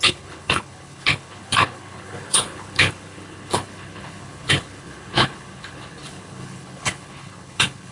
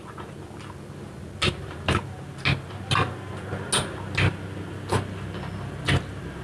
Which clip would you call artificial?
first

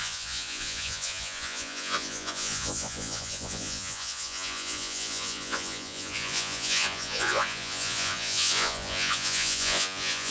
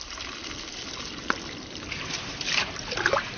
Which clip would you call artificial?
first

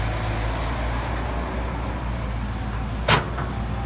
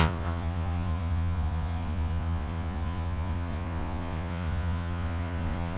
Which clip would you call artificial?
second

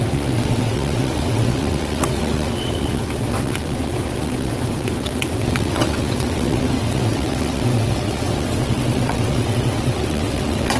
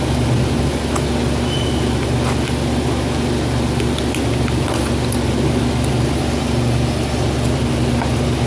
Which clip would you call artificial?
first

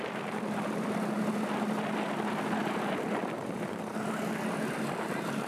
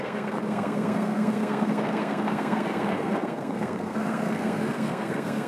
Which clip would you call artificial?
second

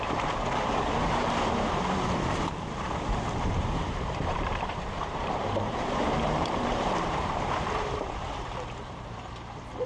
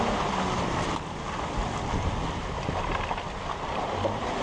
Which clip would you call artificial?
first